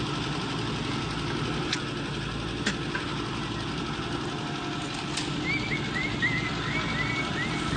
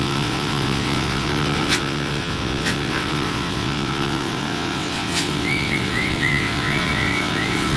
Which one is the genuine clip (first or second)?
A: first